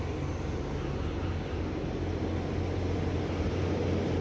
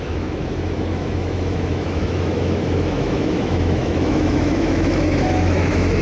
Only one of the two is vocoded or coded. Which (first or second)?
second